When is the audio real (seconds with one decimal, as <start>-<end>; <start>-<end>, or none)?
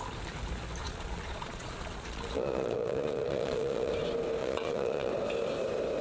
0.0-0.8; 3.9-4.4; 5.1-6.0